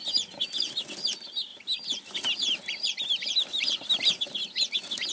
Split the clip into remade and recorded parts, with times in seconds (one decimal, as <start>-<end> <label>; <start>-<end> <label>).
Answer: 0.0-5.1 recorded